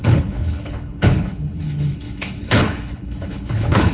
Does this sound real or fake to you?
fake